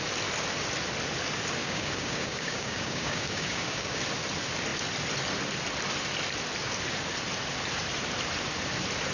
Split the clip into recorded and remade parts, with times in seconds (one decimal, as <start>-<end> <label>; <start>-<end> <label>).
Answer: 0.0-1.6 recorded; 1.6-4.0 remade; 4.0-9.1 recorded